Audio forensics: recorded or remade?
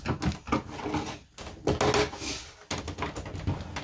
recorded